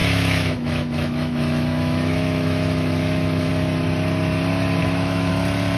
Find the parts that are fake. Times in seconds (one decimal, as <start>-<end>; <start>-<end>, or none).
0.0-3.5; 4.8-5.3